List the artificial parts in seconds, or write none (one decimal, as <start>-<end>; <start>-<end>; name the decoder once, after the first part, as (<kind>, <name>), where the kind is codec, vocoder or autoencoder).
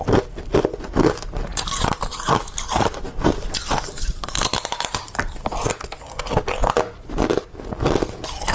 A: 1.5-5.7 (vocoder, BigVGAN v2)